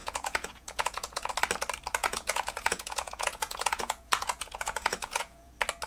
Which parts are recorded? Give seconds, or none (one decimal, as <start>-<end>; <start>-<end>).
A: 1.3-2.0; 5.5-5.9